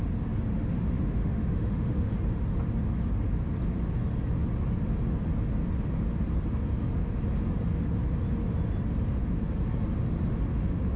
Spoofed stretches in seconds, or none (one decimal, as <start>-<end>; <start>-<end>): 0.5-2.1